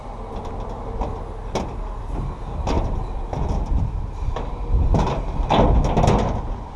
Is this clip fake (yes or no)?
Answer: no